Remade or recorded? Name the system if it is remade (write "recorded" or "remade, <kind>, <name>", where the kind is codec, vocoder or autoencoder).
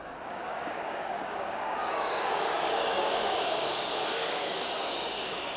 remade, codec, DAC